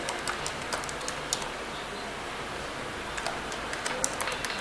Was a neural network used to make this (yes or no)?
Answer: no